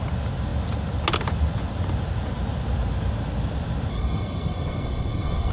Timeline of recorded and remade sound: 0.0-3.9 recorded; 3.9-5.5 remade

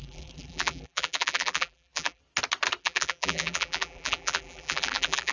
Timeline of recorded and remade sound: 0.0-2.2 remade; 2.2-2.8 recorded; 2.8-5.3 remade